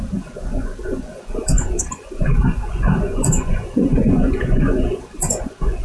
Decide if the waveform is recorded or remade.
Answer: remade